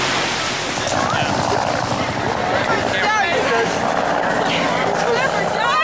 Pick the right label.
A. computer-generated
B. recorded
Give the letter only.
B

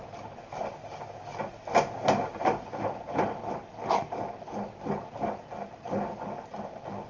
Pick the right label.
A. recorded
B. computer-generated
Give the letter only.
A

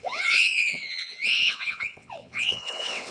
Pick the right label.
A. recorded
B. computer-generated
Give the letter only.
B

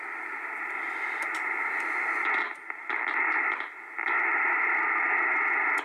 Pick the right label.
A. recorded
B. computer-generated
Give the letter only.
A